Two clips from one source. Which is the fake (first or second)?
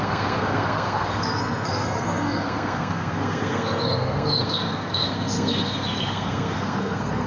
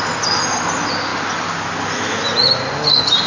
first